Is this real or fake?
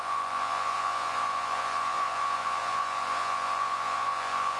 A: fake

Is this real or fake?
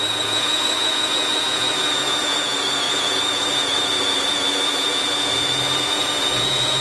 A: fake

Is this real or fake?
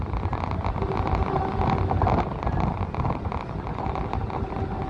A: real